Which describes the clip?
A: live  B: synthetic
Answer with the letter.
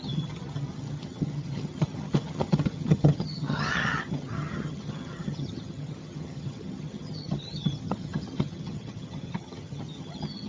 B